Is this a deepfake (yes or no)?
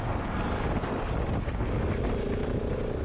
no